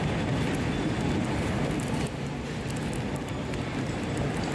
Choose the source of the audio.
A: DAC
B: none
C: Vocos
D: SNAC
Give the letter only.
B